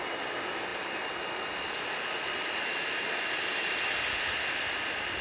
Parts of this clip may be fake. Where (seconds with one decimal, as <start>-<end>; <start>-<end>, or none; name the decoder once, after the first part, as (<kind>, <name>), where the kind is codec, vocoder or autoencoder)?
none